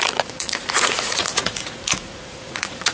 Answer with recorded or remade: remade